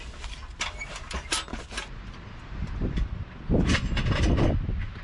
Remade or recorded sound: recorded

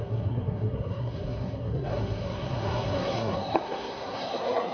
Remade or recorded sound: remade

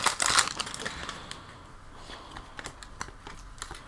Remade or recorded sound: recorded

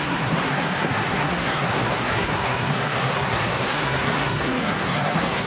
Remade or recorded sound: remade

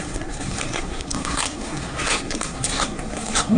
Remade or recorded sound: remade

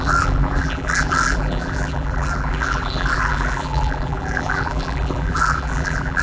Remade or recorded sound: remade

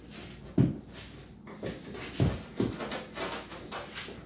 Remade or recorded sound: recorded